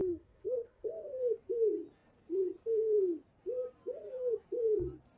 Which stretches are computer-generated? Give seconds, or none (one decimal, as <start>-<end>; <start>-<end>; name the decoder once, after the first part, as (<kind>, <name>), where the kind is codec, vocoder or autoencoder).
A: 0.0-0.9 (codec, SNAC)